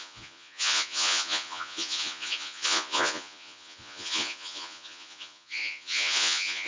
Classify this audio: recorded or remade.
remade